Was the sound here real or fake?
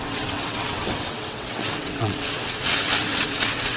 fake